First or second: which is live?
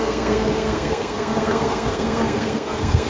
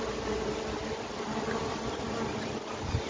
second